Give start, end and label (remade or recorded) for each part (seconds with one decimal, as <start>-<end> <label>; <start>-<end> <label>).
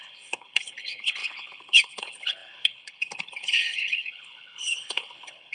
0.0-5.5 remade